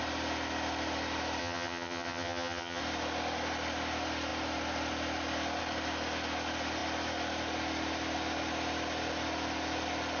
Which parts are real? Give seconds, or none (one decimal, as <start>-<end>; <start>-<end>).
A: 0.0-1.4; 2.8-10.2